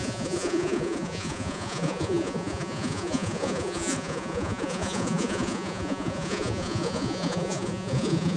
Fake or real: fake